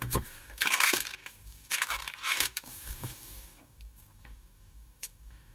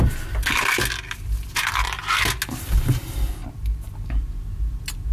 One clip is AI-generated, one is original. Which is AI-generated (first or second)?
first